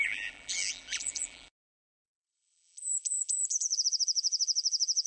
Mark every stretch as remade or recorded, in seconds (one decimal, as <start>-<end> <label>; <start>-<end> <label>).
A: 0.0-5.1 remade